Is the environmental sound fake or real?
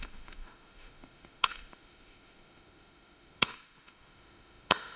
fake